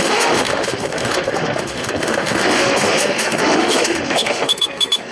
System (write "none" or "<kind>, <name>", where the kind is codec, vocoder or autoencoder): autoencoder, DAC-VAE